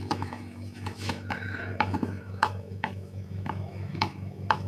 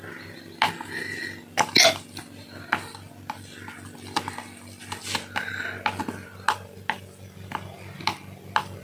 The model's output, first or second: first